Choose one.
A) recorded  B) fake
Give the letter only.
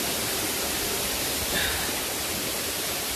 B